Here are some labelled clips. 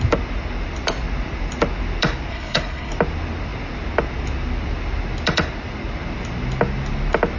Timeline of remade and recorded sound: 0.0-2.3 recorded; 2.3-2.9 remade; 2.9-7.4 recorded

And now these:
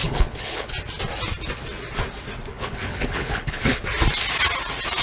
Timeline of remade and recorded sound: 0.0-0.7 remade; 0.7-2.5 recorded; 2.5-3.8 remade; 3.8-5.0 recorded

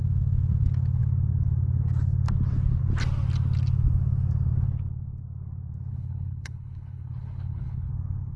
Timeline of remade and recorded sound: 0.0-5.9 recorded; 5.9-7.9 remade; 7.9-8.4 recorded

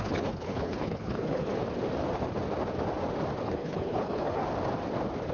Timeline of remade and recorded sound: 0.0-1.6 remade; 1.6-3.4 recorded; 3.4-4.4 remade; 4.4-5.3 recorded

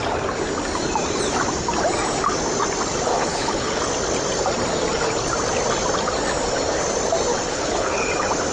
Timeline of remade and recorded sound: 0.0-3.1 recorded; 3.1-3.8 remade; 3.8-7.3 recorded; 7.3-8.1 remade; 8.1-8.5 recorded

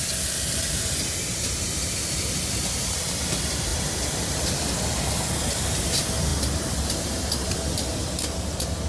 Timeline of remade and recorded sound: 0.0-8.9 recorded

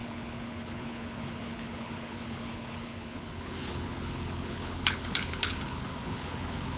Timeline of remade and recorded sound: 0.0-6.8 remade

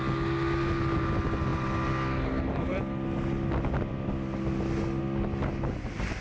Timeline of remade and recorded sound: 0.0-6.2 recorded